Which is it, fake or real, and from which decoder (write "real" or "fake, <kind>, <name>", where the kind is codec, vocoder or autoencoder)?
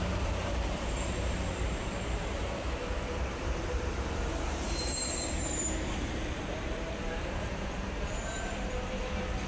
fake, vocoder, BigVGAN v2